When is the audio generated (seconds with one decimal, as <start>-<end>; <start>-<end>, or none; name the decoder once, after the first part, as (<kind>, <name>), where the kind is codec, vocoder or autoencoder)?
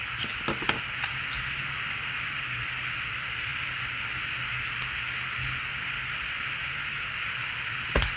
none